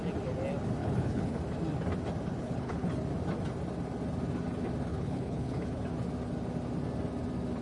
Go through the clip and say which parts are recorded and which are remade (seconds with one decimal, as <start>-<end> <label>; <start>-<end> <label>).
0.0-0.8 recorded; 0.8-1.4 remade; 1.4-2.4 recorded; 2.4-2.9 remade; 2.9-4.9 recorded; 4.9-5.8 remade; 5.8-7.6 recorded